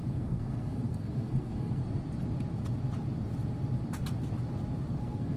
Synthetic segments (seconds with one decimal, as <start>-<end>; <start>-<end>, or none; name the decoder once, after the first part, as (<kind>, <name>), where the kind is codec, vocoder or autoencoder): 0.0-1.8 (codec, SNAC); 5.0-5.4